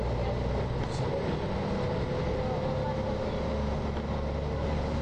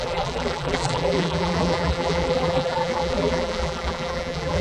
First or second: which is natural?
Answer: first